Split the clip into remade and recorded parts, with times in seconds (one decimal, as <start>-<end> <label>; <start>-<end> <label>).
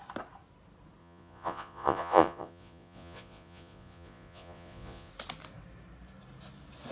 0.0-1.0 recorded; 1.0-5.1 remade; 5.1-6.9 recorded